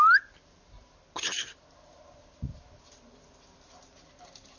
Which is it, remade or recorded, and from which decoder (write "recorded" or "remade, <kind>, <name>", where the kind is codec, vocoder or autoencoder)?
recorded